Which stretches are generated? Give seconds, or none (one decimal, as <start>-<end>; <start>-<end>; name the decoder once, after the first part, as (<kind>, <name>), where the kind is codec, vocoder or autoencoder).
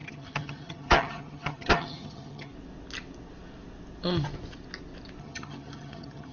0.0-2.5 (vocoder, HiFi-GAN); 5.2-6.3